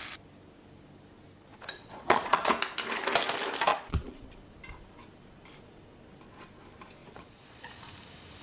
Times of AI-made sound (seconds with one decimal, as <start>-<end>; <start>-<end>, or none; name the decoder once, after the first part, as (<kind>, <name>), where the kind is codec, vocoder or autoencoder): 1.5-2.5 (vocoder, Vocos); 3.7-4.3; 7.0-7.9